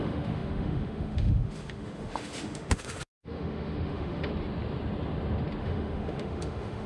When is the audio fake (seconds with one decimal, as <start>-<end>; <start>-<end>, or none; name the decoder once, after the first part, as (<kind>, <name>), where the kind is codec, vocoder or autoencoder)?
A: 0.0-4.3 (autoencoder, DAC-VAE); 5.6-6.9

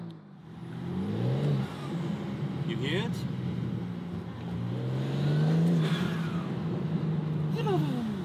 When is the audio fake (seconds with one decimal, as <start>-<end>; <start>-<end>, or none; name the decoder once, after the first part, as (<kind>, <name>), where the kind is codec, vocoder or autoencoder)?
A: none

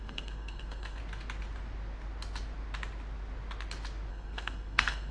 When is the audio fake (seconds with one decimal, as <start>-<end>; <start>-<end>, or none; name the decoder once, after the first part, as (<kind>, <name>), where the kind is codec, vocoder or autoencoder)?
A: 0.0-1.0 (codec, SNAC); 4.1-5.1

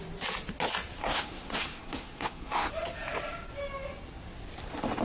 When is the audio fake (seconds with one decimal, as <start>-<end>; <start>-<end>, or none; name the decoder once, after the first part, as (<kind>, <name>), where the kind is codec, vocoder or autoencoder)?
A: 1.0-2.7 (codec, SNAC)

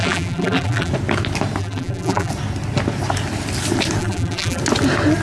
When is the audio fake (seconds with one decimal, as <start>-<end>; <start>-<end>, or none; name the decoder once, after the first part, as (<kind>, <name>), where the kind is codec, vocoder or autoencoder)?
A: 0.0-0.9 (vocoder, BigVGAN v2); 1.6-2.3; 4.0-4.6

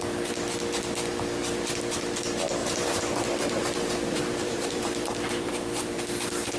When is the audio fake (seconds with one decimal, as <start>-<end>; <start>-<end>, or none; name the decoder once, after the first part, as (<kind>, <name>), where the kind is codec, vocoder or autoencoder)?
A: 2.6-6.0 (vocoder, BigVGAN v2)